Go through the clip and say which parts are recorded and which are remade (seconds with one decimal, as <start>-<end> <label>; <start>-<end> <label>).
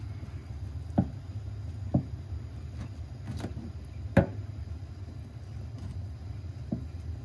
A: 0.0-7.2 recorded